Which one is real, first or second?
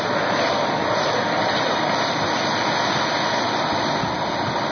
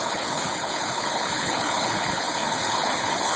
first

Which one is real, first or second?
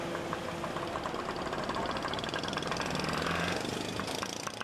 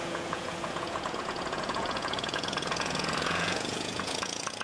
first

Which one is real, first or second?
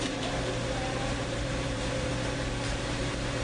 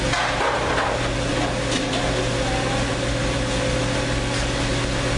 second